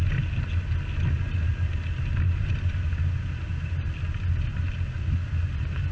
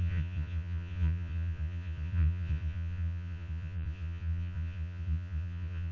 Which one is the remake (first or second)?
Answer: second